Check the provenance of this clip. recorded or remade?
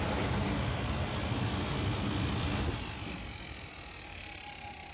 recorded